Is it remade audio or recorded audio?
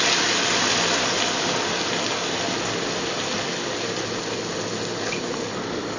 recorded